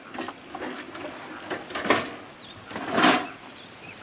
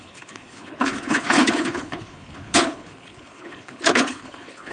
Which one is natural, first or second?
first